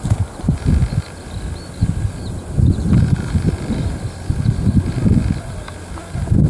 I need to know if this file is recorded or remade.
recorded